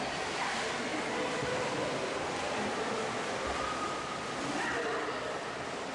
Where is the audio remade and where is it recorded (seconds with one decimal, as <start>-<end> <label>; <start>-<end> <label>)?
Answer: 0.0-5.9 recorded